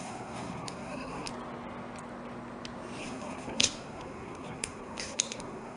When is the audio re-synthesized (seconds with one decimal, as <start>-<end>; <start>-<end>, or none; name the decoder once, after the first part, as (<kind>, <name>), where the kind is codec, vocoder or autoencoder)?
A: 0.0-1.3 (codec, SNAC); 3.0-5.8